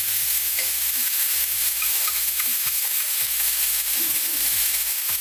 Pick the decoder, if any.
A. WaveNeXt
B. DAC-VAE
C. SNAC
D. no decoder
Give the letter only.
B